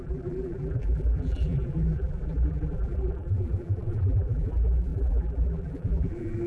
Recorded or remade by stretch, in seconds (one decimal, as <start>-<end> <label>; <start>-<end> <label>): 0.0-6.5 remade